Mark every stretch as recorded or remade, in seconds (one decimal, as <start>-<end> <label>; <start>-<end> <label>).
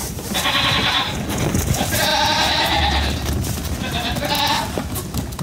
0.0-1.4 remade; 1.4-2.1 recorded; 2.1-3.3 remade; 3.3-5.4 recorded